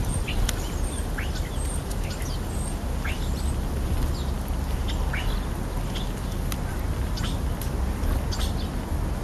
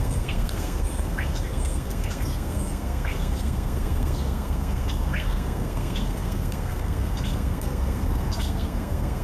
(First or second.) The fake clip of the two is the second